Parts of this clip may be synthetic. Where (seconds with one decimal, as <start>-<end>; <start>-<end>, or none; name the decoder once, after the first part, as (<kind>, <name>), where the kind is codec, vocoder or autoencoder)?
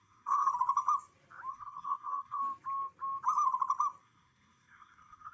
0.0-0.5 (codec, SNAC); 1.5-2.4; 4.0-5.3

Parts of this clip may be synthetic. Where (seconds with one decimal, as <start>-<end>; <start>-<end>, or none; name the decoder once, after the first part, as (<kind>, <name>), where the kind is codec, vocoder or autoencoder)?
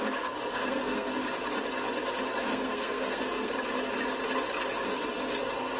0.5-1.1 (codec, SNAC); 2.5-3.5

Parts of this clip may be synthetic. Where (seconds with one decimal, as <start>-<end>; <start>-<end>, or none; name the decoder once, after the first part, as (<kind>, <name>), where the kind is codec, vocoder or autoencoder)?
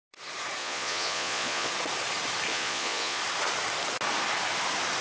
0.6-1.7 (vocoder, Vocos); 2.5-3.2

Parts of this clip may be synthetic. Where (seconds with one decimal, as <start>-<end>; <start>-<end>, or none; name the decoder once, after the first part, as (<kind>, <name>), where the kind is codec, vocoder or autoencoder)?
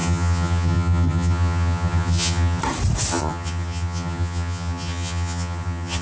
0.0-2.6 (vocoder, HiFi-GAN); 3.1-6.0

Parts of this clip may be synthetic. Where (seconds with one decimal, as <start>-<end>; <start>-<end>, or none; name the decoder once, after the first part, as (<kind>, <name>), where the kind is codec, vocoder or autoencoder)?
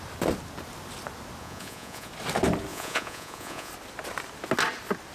1.4-2.1 (vocoder, Vocos); 2.7-3.7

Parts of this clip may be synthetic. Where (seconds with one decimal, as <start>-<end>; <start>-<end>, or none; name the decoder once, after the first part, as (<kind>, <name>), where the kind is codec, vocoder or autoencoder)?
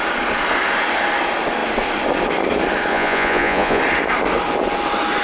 2.9-3.8 (vocoder, Vocos)